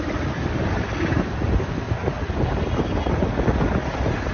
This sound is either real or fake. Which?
real